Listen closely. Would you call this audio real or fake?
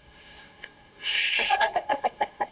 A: fake